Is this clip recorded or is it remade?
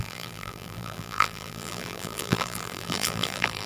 remade